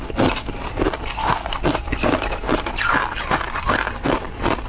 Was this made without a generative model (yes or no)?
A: yes